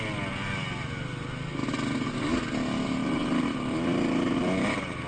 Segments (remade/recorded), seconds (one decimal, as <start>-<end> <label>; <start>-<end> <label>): 0.0-5.1 recorded